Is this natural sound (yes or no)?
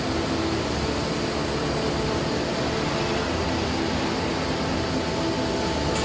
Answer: yes